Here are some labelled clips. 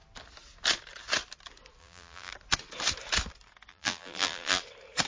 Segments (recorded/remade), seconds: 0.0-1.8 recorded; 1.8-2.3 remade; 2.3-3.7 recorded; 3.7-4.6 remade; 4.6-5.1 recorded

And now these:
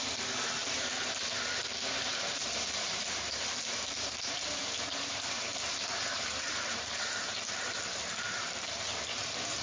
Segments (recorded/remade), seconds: 0.0-0.6 remade; 0.6-2.3 recorded; 2.3-9.6 remade

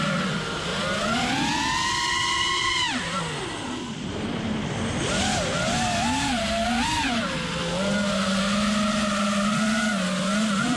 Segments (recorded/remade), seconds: 0.0-0.7 recorded; 0.7-3.2 remade; 3.2-10.8 recorded

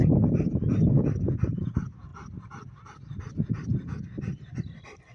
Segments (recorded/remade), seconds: 0.0-5.1 recorded

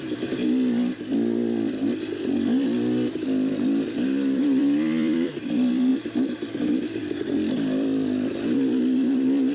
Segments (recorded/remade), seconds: 0.0-0.4 remade; 0.4-3.5 recorded; 3.5-9.5 remade

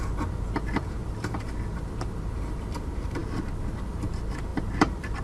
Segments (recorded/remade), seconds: 0.0-1.0 recorded; 1.0-1.5 remade; 1.5-4.5 recorded; 4.5-5.2 remade

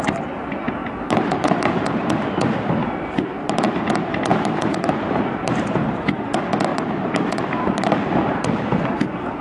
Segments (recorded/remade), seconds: 0.0-0.8 recorded; 0.8-2.1 remade; 2.1-4.3 recorded; 4.3-6.1 remade; 6.1-6.7 recorded; 6.7-9.4 remade

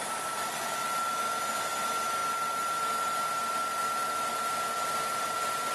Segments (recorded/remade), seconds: 0.0-5.7 recorded